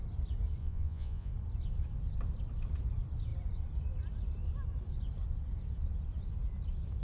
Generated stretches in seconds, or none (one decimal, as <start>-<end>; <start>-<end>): 0.6-1.3